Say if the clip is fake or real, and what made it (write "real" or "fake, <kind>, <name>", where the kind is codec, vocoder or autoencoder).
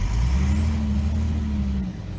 real